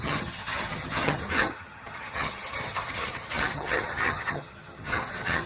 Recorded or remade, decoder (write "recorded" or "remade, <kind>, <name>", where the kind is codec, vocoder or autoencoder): remade, vocoder, HiFi-GAN